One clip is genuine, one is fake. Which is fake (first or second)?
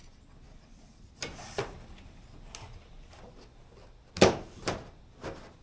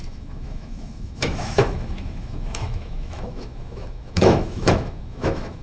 second